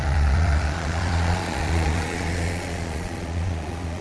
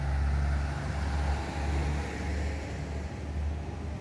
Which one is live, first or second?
second